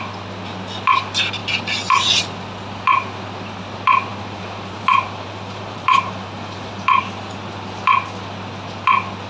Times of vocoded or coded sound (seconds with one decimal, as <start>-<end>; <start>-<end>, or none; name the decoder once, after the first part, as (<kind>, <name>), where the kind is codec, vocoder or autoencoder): 4.1-7.0 (vocoder, BigVGAN v2)